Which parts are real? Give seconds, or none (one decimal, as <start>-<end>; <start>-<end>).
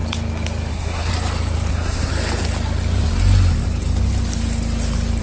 0.0-0.7; 1.1-1.7; 2.1-5.2